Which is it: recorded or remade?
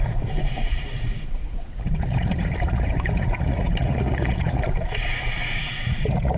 remade